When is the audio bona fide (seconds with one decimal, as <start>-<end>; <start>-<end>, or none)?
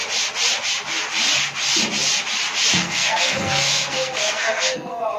0.0-2.7